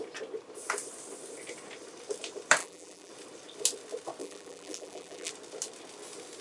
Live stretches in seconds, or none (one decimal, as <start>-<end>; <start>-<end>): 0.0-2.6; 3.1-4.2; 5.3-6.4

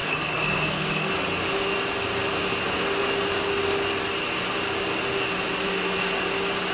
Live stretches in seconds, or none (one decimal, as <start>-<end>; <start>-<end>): 1.1-6.7

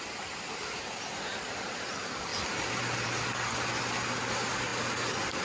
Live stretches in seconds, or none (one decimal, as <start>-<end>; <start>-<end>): 0.0-5.4

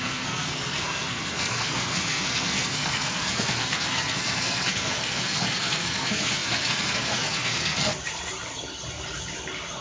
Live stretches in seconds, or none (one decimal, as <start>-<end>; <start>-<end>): 7.9-9.8